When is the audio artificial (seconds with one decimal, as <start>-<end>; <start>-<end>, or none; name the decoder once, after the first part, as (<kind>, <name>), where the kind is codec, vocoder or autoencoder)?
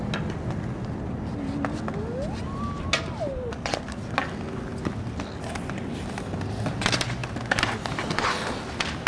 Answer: none